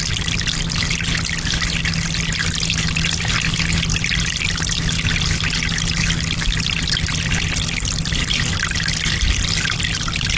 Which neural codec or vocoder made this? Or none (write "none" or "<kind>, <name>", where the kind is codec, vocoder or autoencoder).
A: none